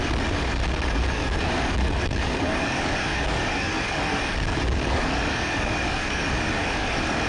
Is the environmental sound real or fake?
fake